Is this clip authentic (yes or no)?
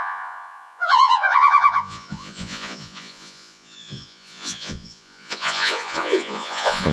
no